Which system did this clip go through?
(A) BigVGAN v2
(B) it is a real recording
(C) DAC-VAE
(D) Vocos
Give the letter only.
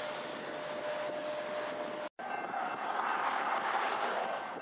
B